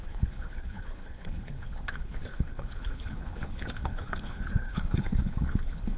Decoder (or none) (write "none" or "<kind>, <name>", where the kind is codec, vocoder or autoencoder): codec, HILCodec